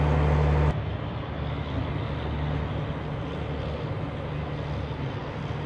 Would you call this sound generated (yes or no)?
no